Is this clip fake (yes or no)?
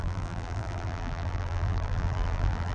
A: yes